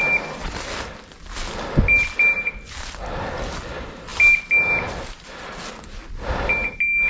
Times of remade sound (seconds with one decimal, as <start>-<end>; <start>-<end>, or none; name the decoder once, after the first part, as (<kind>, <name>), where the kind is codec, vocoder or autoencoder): none